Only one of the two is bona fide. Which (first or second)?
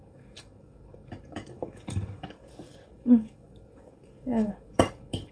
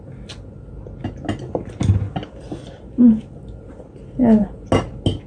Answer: second